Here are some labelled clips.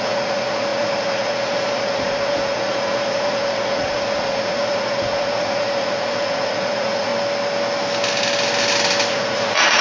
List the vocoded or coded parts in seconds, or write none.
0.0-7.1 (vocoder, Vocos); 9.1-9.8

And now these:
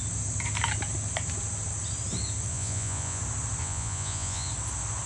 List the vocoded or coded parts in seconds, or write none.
2.5-3.2 (vocoder, Vocos); 3.6-4.5

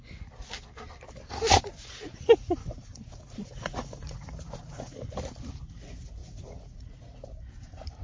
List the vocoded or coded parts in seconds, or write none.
1.8-5.1 (vocoder, Vocos); 6.2-6.9

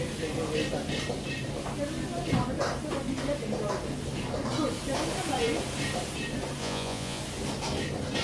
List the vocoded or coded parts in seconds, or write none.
6.6-7.2 (vocoder, Vocos)

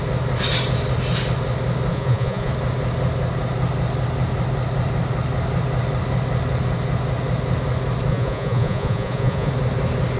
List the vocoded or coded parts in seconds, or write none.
1.9-2.5 (vocoder, Vocos); 8.1-9.5

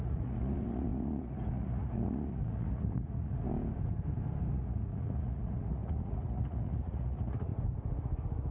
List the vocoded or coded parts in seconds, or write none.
0.0-3.5 (vocoder, Vocos); 4.5-7.5

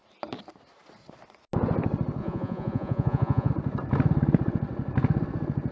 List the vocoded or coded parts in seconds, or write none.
2.2-3.5 (vocoder, Vocos)